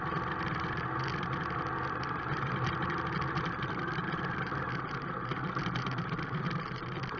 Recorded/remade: recorded